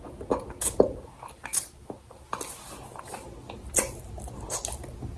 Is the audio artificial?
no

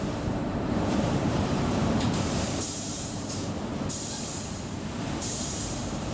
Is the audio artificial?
yes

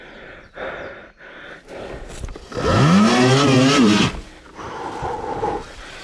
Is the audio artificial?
no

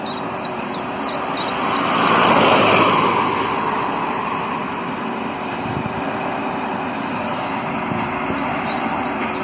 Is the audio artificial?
no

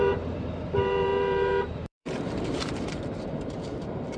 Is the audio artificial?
yes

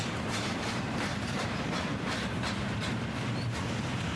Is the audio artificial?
yes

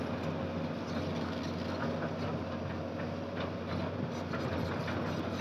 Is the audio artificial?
no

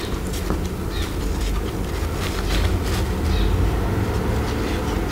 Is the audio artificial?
no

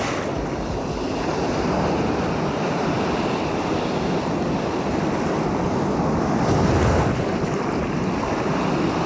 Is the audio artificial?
no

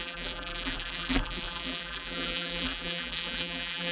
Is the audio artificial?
yes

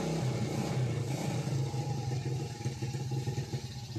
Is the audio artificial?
no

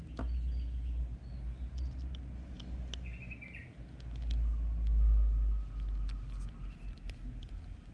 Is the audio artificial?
no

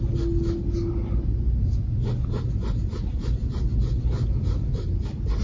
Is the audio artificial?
no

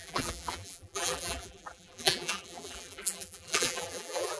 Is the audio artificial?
yes